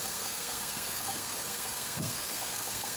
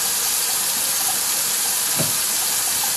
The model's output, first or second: first